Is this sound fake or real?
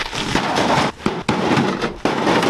real